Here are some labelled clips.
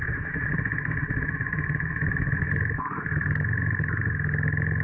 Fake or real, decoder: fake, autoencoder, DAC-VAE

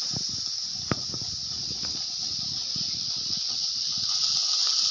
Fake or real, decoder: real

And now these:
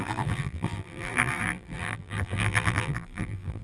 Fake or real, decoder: fake, vocoder, BigVGAN v2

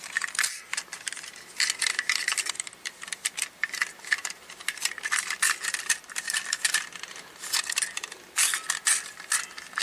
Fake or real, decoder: real